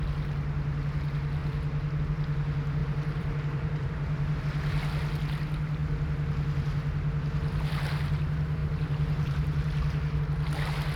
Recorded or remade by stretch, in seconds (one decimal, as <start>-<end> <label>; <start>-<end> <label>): 0.0-2.8 recorded; 2.8-4.4 remade; 4.4-8.6 recorded; 8.6-10.2 remade; 10.2-11.0 recorded